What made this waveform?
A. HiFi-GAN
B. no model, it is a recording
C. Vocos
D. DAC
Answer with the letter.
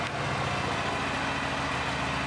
B